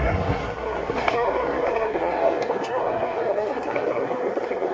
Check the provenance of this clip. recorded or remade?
remade